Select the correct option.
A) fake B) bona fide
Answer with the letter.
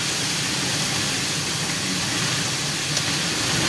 B